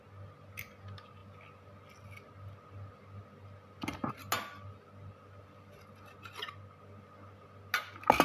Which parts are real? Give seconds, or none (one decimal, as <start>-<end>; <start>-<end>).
0.0-8.2

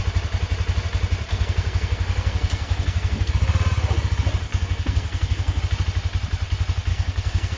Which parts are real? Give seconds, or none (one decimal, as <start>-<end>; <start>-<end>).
0.0-1.3; 3.3-4.5; 5.6-6.9

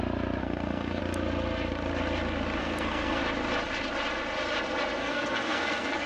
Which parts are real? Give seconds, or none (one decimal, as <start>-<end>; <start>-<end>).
0.0-0.4; 1.0-2.6; 3.2-5.0

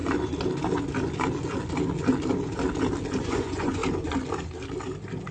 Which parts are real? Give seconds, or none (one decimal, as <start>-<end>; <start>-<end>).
0.0-3.2; 3.8-5.3

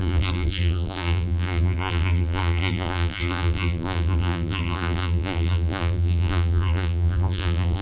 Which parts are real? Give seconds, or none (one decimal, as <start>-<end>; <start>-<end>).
none

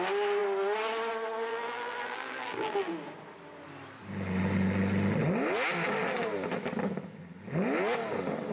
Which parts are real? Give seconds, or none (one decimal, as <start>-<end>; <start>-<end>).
0.0-1.5; 2.9-8.5